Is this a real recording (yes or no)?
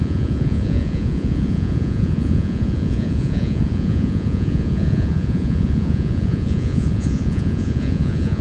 no